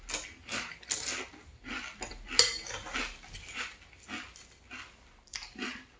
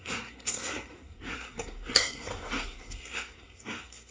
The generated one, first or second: second